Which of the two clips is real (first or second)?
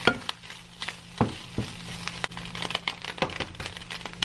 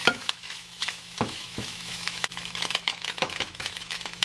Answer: first